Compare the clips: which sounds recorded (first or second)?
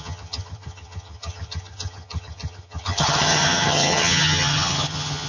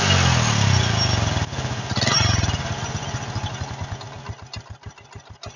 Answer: second